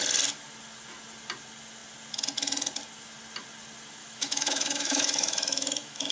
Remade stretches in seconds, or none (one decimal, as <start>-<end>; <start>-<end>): 4.0-6.1

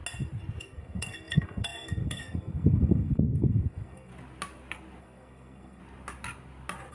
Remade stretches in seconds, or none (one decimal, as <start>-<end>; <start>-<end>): 0.6-4.1; 5.0-5.8

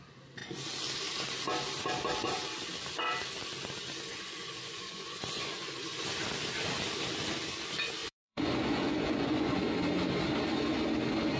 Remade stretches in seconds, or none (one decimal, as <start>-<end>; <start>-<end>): 4.1-6.0; 8.0-9.6